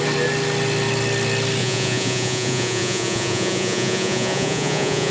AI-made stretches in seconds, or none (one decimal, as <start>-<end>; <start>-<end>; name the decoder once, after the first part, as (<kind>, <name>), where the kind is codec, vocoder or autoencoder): 1.6-5.1 (vocoder, Vocos)